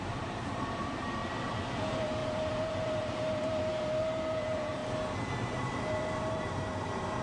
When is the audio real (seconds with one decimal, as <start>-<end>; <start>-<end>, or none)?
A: 1.2-1.8; 4.8-5.4